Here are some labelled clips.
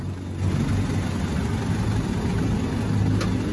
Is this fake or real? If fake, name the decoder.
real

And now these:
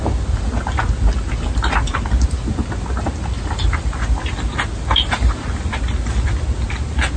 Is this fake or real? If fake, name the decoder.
real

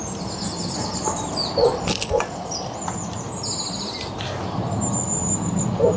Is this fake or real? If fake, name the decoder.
real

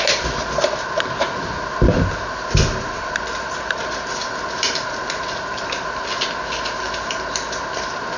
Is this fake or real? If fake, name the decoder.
real